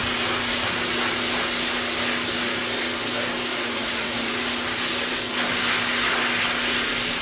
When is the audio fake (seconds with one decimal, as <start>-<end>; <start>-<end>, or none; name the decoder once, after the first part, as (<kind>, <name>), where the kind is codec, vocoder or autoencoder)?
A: 3.5-4.3 (vocoder, Vocos)